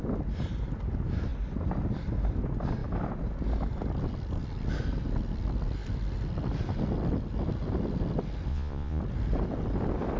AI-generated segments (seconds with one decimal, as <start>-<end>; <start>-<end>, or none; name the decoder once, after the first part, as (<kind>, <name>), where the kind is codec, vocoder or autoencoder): 8.5-9.0 (vocoder, Vocos)